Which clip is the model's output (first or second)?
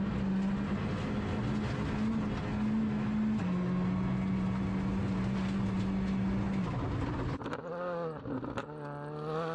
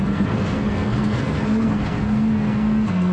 second